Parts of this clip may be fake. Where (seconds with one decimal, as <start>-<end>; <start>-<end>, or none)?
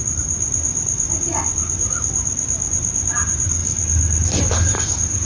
3.1-3.6; 4.4-5.2